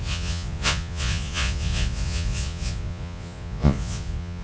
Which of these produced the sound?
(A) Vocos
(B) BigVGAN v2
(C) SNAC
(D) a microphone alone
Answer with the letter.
A